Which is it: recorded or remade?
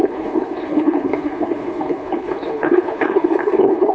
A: remade